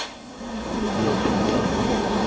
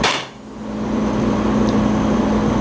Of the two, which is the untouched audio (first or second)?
second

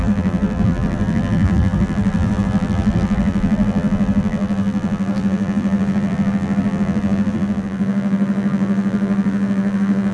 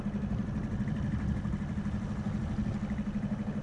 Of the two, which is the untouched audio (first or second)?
second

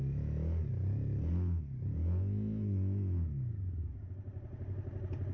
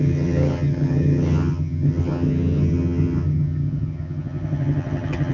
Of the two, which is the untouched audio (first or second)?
first